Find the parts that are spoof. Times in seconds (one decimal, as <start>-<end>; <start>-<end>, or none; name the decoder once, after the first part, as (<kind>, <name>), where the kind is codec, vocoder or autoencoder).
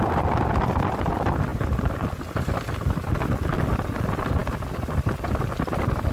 none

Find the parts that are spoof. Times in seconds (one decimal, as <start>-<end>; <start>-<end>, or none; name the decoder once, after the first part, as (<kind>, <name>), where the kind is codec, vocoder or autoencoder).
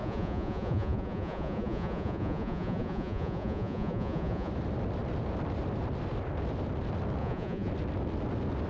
0.0-4.5 (vocoder, Vocos); 7.2-7.7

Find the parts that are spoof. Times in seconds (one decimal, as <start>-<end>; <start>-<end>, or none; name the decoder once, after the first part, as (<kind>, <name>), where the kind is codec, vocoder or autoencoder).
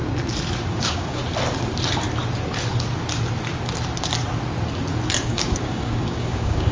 0.7-1.2 (codec, DAC); 5.2-6.7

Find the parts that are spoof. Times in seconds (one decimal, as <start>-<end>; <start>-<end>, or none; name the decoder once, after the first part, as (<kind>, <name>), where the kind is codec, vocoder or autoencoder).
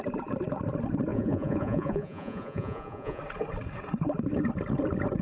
1.1-3.2 (vocoder, Vocos)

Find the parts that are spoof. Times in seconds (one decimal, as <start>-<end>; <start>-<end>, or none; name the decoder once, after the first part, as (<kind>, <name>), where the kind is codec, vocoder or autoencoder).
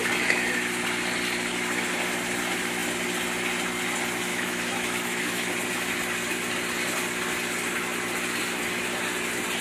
4.3-5.5 (autoencoder, DAC-VAE)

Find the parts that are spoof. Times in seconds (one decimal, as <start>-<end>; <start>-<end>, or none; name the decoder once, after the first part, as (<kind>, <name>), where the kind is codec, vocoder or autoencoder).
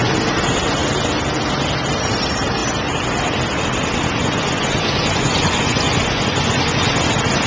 4.2-6.9 (vocoder, Vocos)